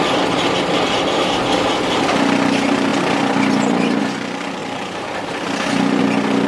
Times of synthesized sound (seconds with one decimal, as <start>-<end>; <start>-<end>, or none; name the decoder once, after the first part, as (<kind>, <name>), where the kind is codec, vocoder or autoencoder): 4.6-6.0 (vocoder, BigVGAN v2)